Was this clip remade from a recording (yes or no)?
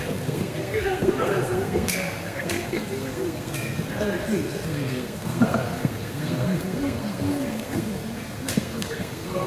yes